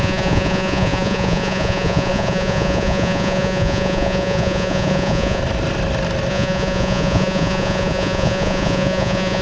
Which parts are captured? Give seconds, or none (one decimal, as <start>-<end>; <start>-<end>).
5.4-6.3